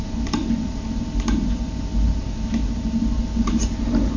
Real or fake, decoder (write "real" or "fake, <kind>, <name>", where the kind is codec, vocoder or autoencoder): real